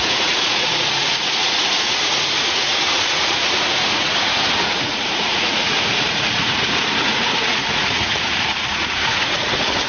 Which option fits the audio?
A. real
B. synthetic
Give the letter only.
B